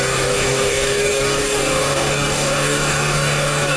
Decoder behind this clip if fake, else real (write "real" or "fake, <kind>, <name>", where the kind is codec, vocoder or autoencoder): fake, codec, DAC